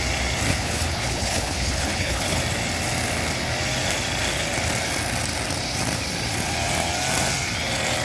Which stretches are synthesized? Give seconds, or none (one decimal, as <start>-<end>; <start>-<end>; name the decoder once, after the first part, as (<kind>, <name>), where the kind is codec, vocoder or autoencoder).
0.5-2.4 (codec, HILCodec)